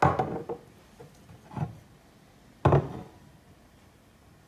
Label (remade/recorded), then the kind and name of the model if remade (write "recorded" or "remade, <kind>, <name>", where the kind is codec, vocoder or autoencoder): recorded